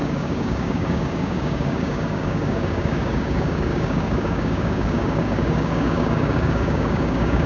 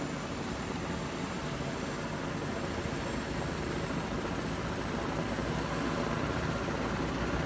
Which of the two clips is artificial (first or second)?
first